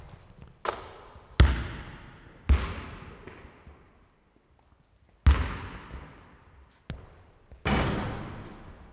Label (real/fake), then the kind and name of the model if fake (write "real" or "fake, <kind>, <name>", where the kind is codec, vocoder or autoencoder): real